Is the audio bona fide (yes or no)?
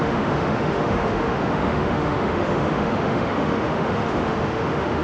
no